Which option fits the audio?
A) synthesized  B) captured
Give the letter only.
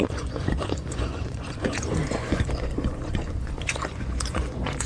A